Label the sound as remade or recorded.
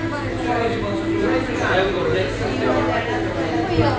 recorded